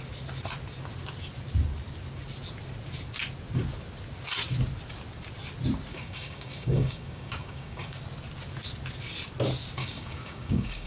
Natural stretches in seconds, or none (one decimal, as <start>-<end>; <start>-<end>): 0.0-5.9; 8.0-9.8